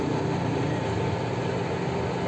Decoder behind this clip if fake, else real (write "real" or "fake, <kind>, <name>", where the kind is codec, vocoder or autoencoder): real